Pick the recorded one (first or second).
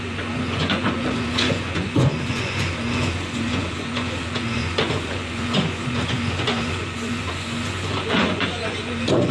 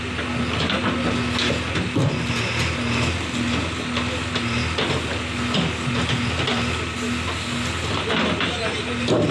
second